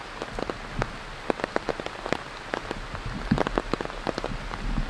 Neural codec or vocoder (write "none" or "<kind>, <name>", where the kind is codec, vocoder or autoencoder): none